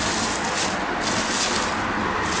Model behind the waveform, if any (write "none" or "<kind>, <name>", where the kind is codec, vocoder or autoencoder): none